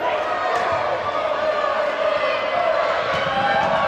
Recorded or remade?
recorded